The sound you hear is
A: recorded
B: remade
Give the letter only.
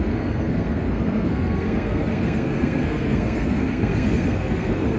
B